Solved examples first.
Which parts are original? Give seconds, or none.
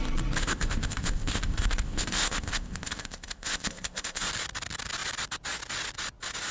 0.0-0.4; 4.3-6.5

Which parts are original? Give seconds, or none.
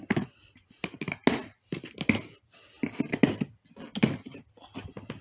0.0-5.2